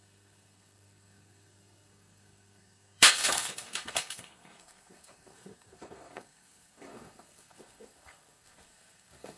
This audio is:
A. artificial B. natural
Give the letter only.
A